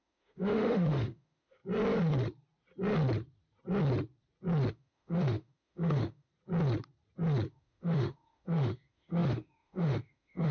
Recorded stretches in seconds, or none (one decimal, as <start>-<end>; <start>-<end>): 1.6-4.7; 6.3-7.5